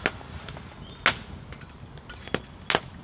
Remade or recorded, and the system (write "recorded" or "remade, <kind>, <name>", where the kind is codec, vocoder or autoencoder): recorded